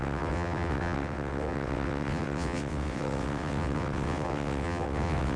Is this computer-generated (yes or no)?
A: yes